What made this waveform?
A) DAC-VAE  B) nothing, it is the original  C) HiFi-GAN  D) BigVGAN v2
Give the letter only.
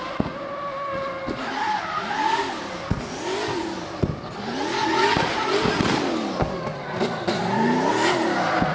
B